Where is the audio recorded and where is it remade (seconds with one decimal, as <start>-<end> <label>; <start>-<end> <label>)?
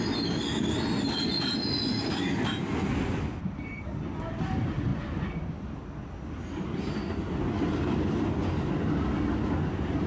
0.0-10.1 recorded